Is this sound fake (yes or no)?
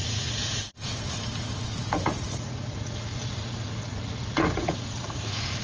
yes